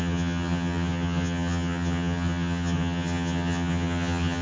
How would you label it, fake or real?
fake